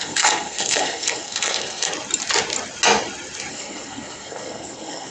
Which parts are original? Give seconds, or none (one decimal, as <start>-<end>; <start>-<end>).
1.9-3.5

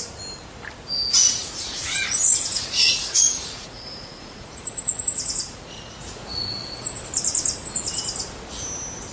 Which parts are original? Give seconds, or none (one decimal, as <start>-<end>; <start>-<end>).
0.0-1.2; 2.0-2.5; 7.0-9.1